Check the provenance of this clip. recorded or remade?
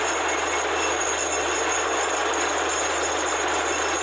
recorded